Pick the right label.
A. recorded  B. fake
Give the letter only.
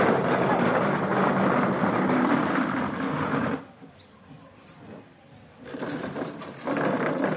B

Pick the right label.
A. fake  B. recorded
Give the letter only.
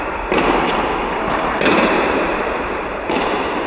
A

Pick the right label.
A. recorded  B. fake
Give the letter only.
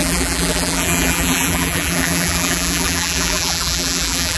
B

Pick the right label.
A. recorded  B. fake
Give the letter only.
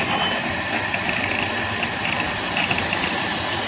B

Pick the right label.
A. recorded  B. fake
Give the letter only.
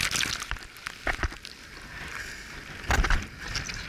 A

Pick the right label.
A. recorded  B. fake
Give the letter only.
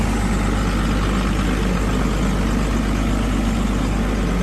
A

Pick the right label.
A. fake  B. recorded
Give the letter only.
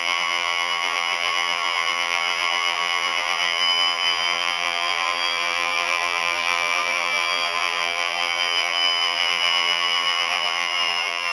A